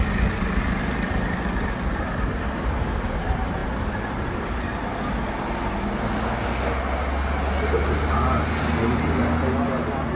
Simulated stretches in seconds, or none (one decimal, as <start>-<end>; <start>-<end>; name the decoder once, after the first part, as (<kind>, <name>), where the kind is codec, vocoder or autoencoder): none